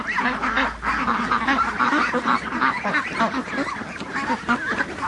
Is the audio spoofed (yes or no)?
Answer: no